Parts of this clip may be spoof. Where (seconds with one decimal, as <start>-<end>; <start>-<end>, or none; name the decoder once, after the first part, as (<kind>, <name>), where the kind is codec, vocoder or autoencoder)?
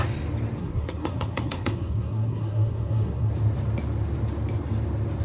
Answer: 0.6-3.3 (codec, SNAC)